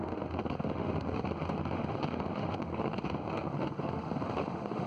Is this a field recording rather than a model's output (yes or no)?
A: no